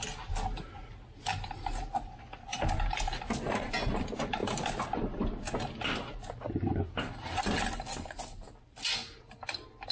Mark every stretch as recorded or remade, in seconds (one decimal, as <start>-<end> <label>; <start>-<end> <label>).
0.0-9.9 recorded